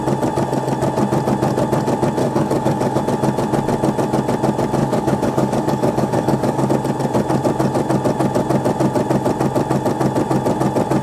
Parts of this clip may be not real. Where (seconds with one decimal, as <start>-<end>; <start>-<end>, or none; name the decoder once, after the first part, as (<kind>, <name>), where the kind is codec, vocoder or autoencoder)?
2.2-3.0 (codec, DAC); 4.8-6.7